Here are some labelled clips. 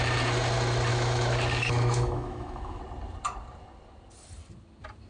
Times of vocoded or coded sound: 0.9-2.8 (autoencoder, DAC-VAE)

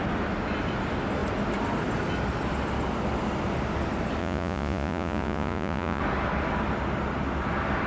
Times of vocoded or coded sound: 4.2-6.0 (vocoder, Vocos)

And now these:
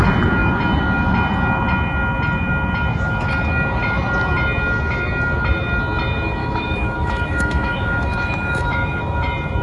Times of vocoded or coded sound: 6.4-9.0 (autoencoder, DAC-VAE)